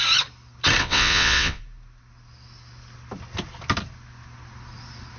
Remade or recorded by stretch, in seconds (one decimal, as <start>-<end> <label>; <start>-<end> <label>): 0.0-0.8 recorded; 0.8-1.6 remade; 1.6-5.2 recorded